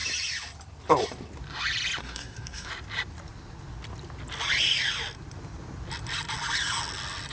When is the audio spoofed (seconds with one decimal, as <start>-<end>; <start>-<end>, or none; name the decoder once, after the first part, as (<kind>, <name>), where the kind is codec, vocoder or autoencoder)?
2.0-2.7 (codec, SNAC)